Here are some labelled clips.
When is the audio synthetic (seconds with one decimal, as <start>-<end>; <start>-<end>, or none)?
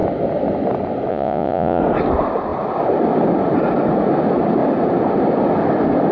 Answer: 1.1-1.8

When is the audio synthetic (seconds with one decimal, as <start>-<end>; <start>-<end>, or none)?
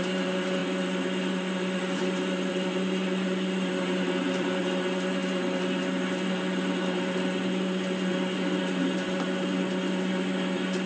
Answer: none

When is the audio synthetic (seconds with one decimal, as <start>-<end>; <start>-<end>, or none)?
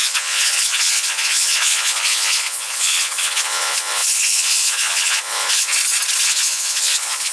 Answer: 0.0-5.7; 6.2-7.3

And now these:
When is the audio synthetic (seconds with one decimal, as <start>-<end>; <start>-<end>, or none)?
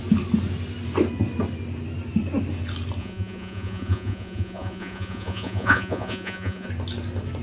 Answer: 3.0-6.7